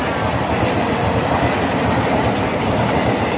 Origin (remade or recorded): recorded